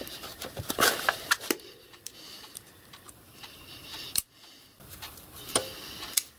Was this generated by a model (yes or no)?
yes